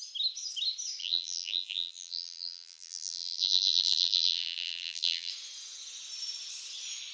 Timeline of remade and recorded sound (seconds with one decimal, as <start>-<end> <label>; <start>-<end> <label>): 0.0-1.0 recorded; 1.0-5.3 remade; 5.3-7.1 recorded